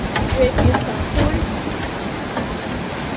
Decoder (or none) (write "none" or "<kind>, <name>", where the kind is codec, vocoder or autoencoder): none